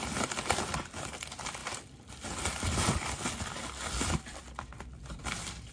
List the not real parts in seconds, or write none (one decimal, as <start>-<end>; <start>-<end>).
none